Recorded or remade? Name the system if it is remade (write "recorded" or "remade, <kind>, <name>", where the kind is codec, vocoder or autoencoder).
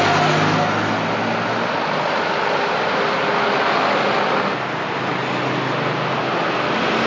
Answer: recorded